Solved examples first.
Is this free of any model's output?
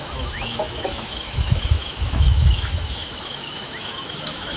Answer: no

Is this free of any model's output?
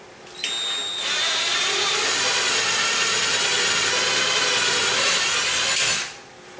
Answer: yes